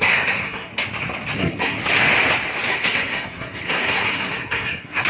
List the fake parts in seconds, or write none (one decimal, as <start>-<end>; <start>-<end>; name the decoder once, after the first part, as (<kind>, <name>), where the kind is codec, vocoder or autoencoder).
0.0-0.7 (codec, SNAC); 1.4-1.8; 2.7-5.1